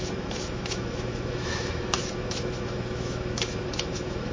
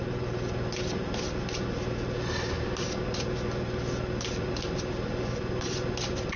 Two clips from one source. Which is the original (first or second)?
second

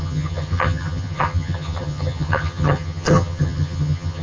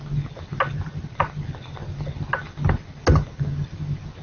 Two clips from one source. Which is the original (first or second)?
second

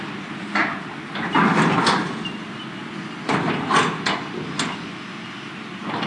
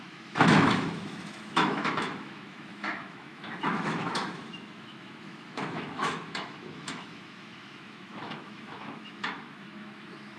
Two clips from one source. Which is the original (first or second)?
first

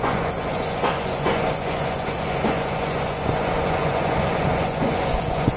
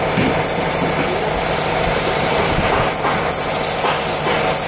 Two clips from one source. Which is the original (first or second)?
second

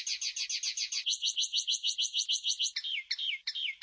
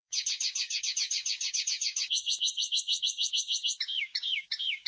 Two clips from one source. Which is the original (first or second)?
first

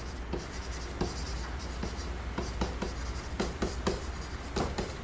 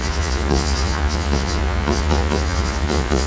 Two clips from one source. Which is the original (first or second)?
first